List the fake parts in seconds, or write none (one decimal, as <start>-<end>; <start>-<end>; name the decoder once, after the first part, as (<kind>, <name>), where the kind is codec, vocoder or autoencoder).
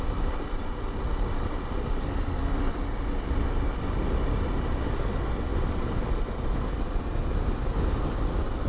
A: 0.0-8.7 (vocoder, BigVGAN v2)